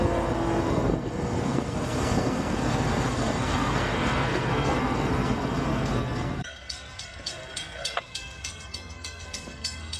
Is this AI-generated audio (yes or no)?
yes